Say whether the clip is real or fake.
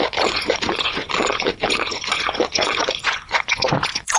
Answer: fake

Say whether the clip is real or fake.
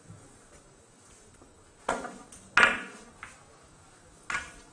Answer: real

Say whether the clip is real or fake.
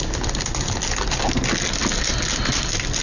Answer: real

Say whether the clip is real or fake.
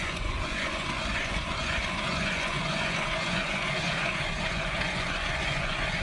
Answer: fake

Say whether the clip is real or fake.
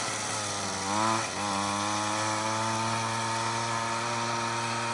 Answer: real